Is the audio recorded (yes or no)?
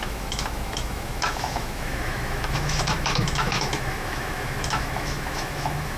no